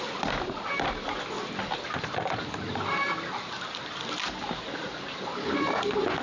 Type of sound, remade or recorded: recorded